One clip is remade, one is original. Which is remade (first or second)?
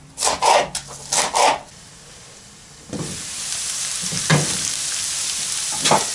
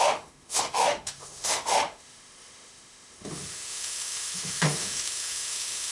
second